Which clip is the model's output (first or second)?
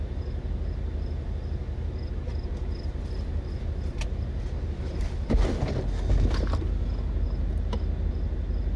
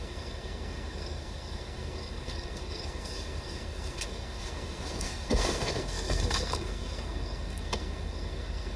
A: second